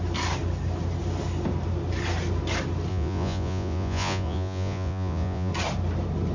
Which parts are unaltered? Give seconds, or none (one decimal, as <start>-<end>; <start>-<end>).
0.0-2.9; 5.5-6.3